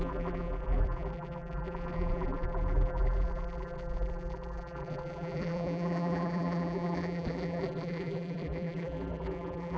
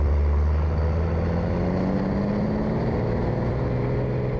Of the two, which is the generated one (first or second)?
first